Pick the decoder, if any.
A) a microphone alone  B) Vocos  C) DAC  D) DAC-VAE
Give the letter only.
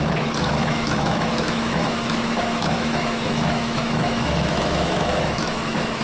D